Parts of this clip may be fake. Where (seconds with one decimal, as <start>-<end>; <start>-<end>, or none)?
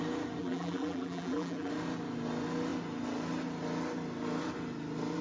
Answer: 0.4-1.7